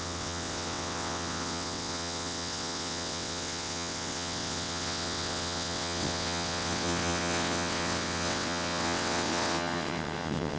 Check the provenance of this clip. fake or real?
fake